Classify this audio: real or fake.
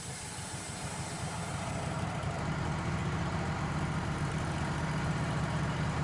fake